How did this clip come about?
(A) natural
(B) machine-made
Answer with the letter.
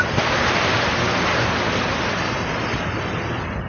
A